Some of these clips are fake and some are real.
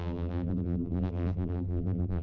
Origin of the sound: fake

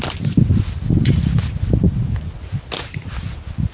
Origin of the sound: real